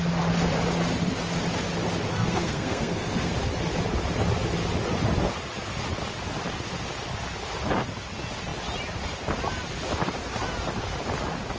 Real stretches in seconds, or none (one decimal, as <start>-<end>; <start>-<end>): 0.0-2.1; 3.3-11.6